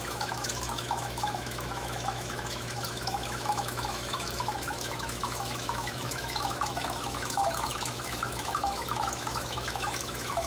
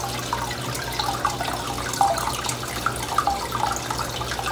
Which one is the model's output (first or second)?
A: first